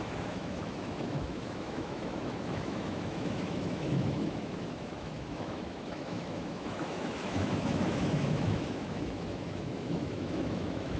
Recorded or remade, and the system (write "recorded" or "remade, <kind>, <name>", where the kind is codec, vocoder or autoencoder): remade, autoencoder, DAC-VAE